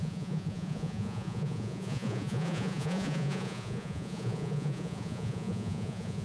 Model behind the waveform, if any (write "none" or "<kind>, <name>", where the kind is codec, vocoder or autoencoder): vocoder, Vocos